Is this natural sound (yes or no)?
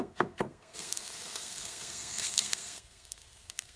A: no